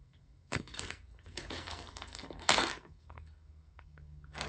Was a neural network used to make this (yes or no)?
yes